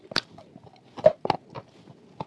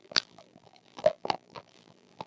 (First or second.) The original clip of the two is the first